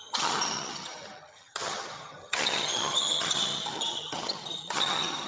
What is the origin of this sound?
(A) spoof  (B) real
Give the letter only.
A